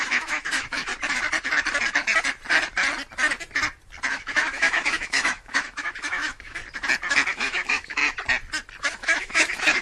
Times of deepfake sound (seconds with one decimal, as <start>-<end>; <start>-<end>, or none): 0.0-0.9; 4.1-6.6; 7.3-8.0; 8.8-9.8